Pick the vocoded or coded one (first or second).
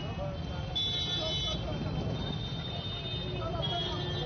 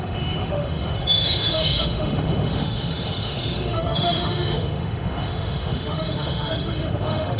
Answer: second